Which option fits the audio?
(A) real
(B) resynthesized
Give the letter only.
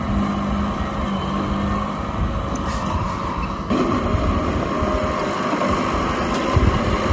A